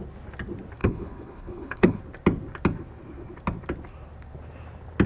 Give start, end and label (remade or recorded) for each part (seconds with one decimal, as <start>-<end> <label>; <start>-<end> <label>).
0.0-0.8 recorded; 0.8-2.0 remade; 2.0-5.1 recorded